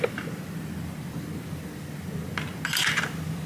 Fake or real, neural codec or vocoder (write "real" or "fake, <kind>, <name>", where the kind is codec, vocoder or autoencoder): real